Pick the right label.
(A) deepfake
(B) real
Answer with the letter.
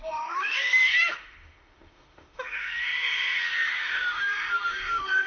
A